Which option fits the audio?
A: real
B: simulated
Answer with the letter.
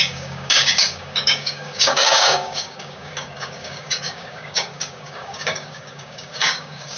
B